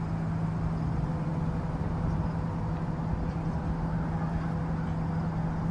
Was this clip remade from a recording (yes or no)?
no